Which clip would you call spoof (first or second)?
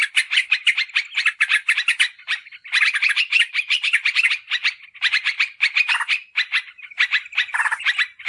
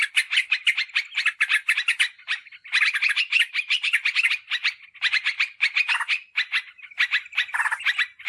first